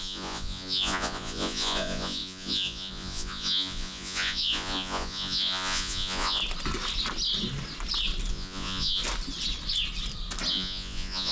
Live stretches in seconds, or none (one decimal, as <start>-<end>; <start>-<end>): 6.4-8.3; 9.0-10.5